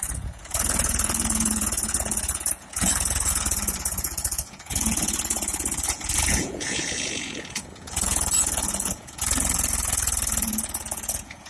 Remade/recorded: remade